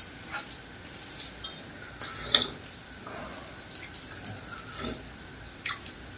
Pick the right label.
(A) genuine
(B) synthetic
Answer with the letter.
A